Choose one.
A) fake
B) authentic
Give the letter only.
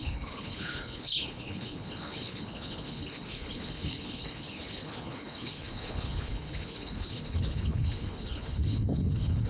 A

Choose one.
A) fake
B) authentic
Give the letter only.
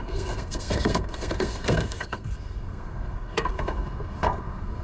A